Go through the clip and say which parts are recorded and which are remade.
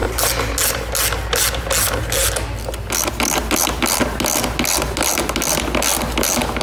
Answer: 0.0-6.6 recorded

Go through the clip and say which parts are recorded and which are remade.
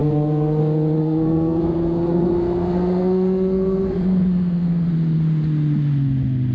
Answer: 0.0-0.6 remade; 0.6-1.0 recorded; 1.0-4.9 remade; 4.9-6.5 recorded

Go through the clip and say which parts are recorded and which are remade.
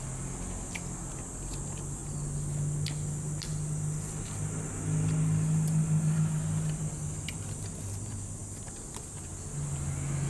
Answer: 0.0-10.3 recorded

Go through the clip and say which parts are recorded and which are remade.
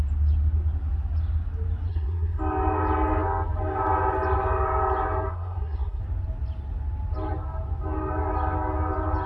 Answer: 0.0-1.9 recorded; 1.9-2.4 remade; 2.4-5.3 recorded; 5.3-6.0 remade; 6.0-9.3 recorded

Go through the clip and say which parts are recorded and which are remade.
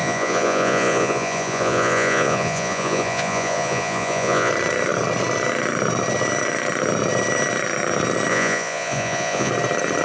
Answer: 0.0-4.5 remade; 4.5-8.3 recorded; 8.3-9.5 remade; 9.5-10.0 recorded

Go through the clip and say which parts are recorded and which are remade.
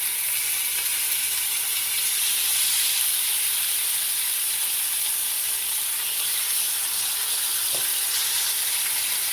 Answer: 0.0-0.9 recorded; 0.9-1.9 remade; 1.9-5.2 recorded; 5.2-6.8 remade; 6.8-9.3 recorded